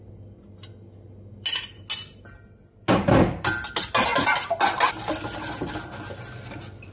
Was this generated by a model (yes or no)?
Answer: no